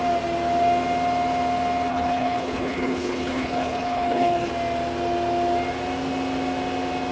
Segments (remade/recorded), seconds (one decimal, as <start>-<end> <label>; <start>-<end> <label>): 0.0-1.9 recorded; 1.9-4.5 remade; 4.5-7.1 recorded